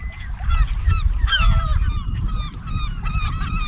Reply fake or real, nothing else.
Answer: fake